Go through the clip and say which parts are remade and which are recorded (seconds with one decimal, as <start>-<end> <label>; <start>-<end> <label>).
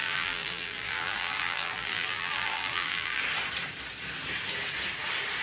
0.0-3.2 remade; 3.2-5.4 recorded